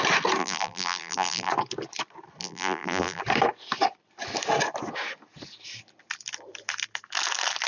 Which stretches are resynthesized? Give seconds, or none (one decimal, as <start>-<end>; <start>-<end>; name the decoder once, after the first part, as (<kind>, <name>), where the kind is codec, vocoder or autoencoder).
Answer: 0.4-1.5 (vocoder, BigVGAN v2); 2.4-3.2